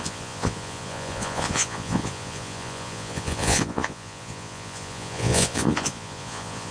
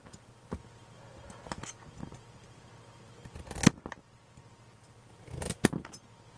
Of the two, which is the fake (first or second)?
first